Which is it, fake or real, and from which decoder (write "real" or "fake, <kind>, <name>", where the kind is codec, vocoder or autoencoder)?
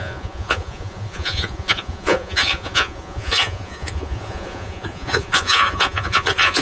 fake, vocoder, Vocos